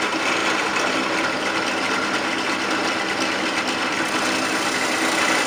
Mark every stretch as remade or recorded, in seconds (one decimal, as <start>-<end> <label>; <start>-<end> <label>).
0.0-5.5 recorded